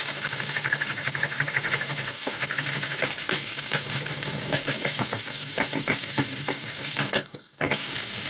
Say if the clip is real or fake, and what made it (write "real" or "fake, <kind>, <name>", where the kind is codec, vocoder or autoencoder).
fake, codec, DAC